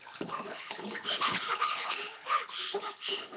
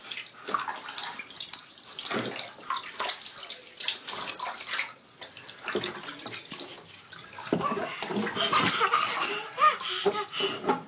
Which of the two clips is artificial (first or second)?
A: first